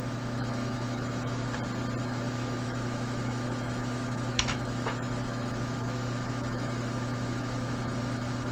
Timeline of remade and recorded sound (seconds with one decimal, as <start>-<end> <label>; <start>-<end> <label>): 0.0-1.4 remade; 1.4-2.0 recorded; 2.0-8.5 remade